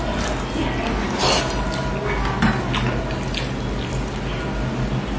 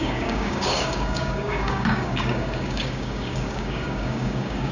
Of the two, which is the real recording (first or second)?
first